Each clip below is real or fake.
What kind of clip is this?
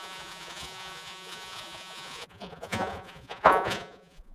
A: fake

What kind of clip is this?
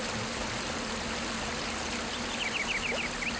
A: real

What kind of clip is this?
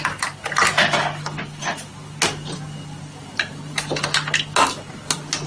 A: real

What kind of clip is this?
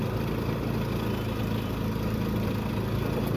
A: real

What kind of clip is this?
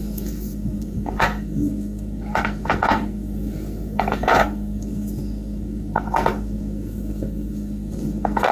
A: fake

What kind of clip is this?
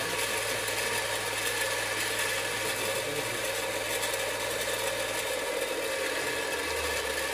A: real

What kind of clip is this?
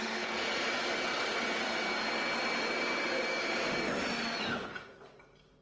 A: real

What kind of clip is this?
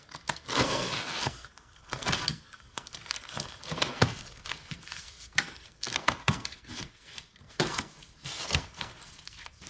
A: fake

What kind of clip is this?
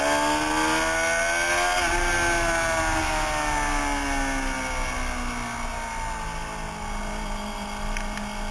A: real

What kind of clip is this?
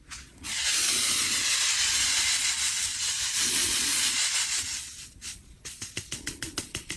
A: fake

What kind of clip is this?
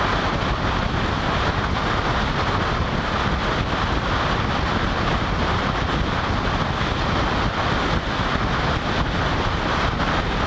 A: real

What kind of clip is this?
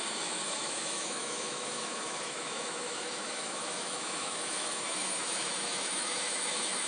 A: fake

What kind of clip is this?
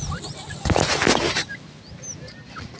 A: real